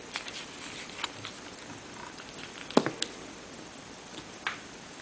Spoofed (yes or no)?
no